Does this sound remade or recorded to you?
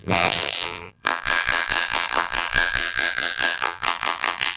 remade